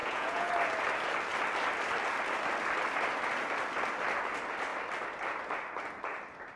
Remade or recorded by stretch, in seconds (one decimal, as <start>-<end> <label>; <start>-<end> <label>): 0.0-0.5 remade; 0.5-6.6 recorded